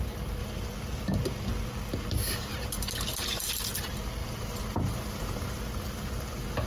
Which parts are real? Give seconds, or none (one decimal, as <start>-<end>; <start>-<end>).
0.0-4.2; 5.6-6.7